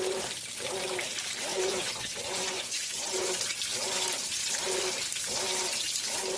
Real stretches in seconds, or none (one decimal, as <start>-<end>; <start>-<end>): 0.0-1.5; 3.3-6.4